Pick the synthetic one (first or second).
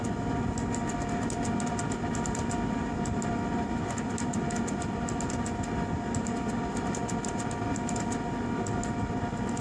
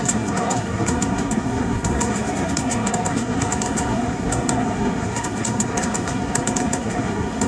second